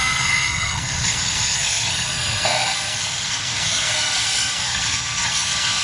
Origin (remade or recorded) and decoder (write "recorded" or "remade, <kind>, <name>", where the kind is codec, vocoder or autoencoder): remade, codec, SNAC